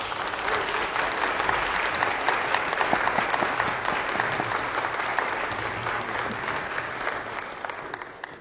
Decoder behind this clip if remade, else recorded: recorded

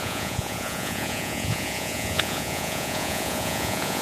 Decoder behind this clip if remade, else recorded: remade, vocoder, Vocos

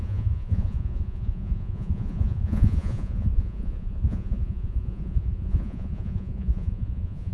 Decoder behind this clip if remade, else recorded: remade, vocoder, Vocos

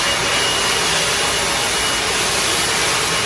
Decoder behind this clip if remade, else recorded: recorded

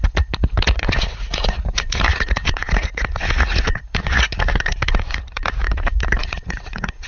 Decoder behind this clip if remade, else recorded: remade, vocoder, Vocos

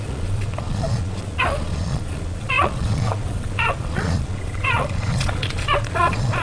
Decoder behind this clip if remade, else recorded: remade, vocoder, Vocos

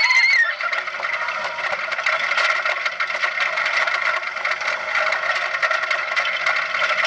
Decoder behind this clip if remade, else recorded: recorded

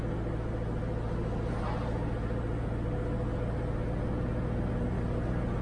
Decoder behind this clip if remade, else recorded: recorded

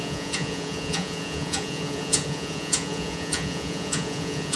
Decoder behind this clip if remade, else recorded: remade, vocoder, Vocos